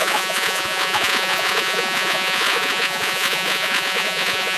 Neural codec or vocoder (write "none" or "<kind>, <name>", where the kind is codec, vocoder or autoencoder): vocoder, Vocos